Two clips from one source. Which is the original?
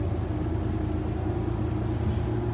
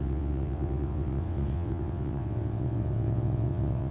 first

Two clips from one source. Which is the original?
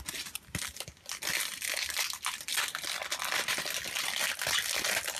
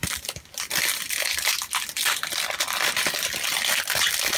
first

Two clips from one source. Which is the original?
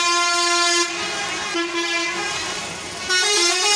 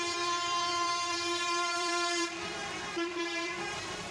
first